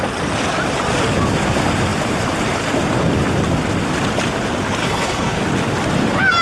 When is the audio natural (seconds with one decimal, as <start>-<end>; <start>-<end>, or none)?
0.0-4.8; 5.4-6.4